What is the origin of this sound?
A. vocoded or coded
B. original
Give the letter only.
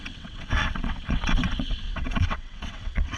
A